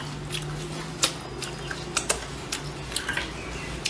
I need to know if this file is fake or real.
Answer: real